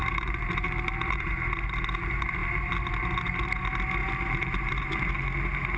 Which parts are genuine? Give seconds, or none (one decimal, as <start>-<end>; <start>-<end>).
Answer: 1.3-4.0; 5.1-5.8

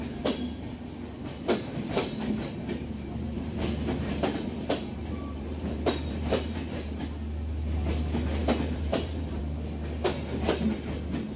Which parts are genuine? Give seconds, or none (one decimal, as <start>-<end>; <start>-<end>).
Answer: 0.0-2.0; 7.0-8.4; 9.4-11.4

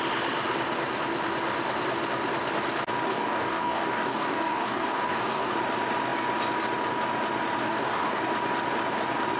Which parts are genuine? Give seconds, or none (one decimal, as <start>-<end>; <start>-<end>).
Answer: 0.0-3.1; 5.5-7.6; 8.2-9.4

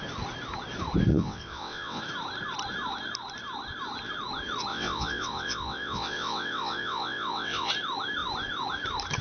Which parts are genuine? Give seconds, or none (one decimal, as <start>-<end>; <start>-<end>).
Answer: 0.0-1.1; 2.0-4.7; 7.7-9.2

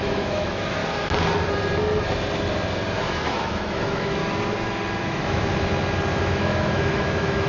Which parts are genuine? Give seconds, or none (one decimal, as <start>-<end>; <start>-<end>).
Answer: 0.8-3.0; 4.2-5.0; 5.5-6.2